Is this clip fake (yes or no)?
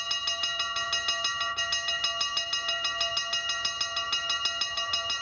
no